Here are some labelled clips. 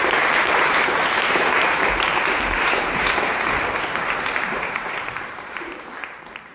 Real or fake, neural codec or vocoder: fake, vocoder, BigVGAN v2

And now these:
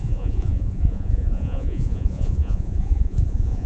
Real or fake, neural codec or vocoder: fake, vocoder, Vocos